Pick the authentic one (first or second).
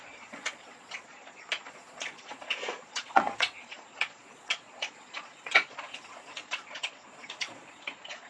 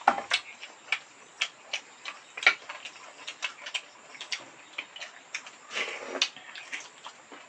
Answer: second